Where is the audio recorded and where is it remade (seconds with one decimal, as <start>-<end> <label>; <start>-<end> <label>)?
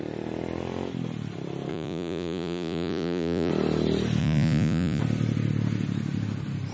0.0-1.7 recorded; 1.7-3.5 remade; 3.5-4.2 recorded; 4.2-5.0 remade; 5.0-6.7 recorded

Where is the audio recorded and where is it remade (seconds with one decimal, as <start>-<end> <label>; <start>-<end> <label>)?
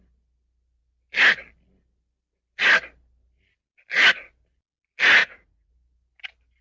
0.0-5.2 recorded; 5.2-5.7 remade; 5.7-6.6 recorded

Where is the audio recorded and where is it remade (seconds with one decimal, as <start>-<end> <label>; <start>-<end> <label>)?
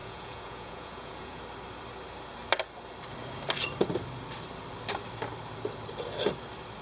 0.0-1.4 remade; 1.4-6.8 recorded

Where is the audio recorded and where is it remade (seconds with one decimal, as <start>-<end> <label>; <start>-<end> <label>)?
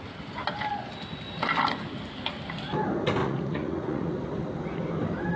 0.0-3.2 recorded; 3.2-4.1 remade; 4.1-5.4 recorded